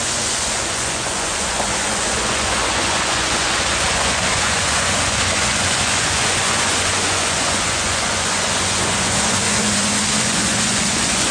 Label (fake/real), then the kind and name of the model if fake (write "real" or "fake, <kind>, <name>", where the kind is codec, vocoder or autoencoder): fake, vocoder, Vocos